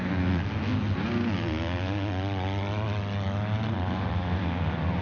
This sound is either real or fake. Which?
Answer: real